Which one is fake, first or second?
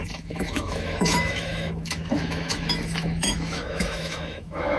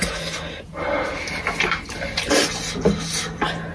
first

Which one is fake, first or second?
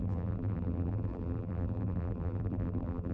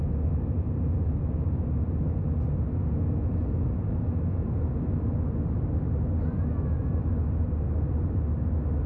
first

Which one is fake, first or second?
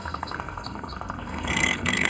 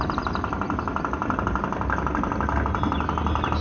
first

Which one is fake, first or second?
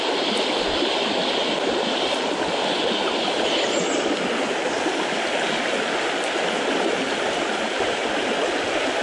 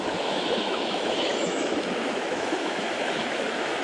second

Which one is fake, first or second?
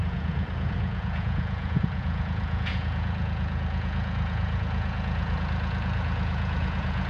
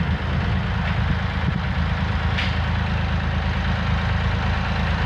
first